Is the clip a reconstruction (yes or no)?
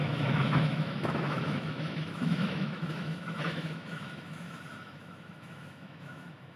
yes